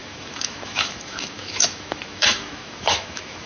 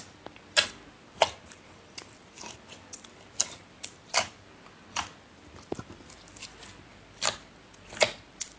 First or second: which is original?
second